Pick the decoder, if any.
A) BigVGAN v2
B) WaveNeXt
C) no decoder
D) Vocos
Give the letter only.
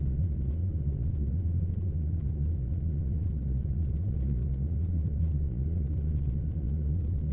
D